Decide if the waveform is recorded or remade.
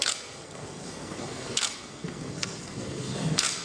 remade